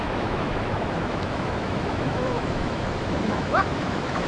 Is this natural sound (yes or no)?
no